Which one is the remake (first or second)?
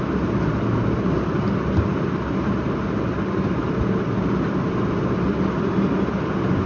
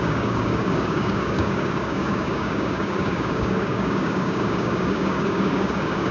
second